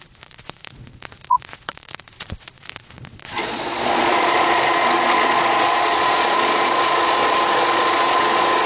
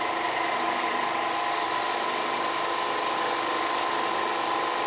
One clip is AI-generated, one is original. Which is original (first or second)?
second